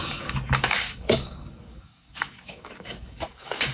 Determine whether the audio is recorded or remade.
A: remade